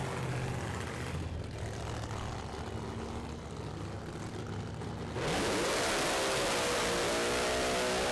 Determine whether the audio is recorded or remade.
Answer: recorded